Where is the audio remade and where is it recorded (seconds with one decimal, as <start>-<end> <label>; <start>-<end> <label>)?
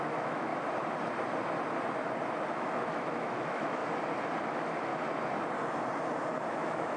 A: 0.0-0.5 remade; 0.5-2.5 recorded; 2.5-3.8 remade; 3.8-4.4 recorded; 4.4-4.9 remade; 4.9-6.5 recorded; 6.5-7.0 remade